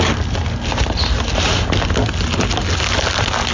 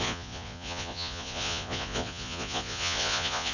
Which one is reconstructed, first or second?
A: second